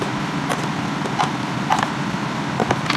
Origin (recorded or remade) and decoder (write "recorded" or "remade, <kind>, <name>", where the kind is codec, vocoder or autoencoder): recorded